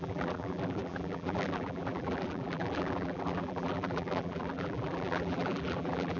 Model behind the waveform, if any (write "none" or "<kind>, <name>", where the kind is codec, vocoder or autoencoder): vocoder, BigVGAN v2